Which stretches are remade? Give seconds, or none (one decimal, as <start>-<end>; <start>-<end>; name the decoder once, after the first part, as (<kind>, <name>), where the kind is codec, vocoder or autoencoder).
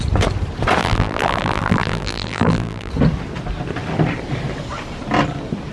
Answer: 0.8-2.9 (vocoder, BigVGAN v2)